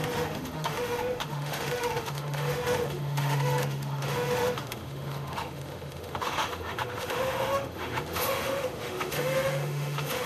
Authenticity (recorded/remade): remade